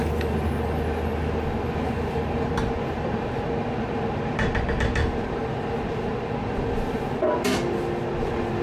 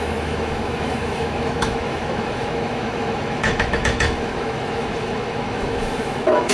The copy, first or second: second